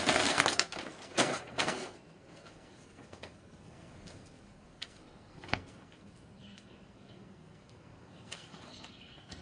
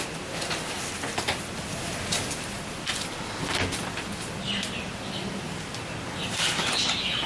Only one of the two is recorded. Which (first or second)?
second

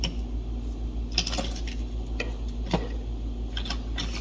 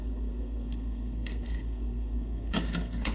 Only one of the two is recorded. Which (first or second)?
first